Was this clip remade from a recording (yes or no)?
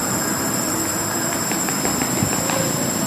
no